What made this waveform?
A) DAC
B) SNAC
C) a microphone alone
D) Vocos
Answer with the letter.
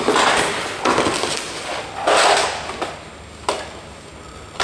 C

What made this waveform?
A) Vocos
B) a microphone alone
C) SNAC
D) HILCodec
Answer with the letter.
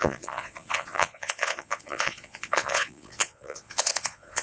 A